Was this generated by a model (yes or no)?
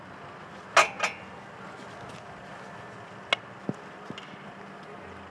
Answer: no